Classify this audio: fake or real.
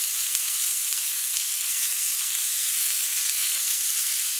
fake